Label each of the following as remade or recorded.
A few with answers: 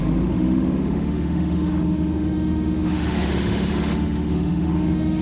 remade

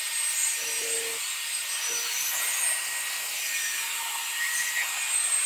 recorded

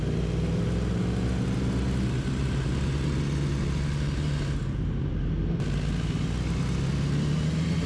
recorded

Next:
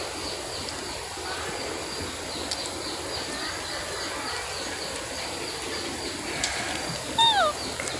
recorded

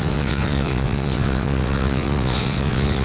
remade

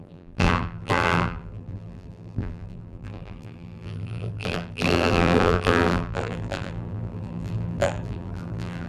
remade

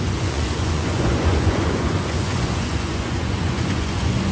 remade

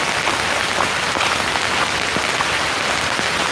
recorded